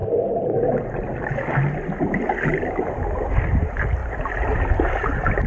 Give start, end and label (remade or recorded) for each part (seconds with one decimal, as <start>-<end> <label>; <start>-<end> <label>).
0.0-5.5 recorded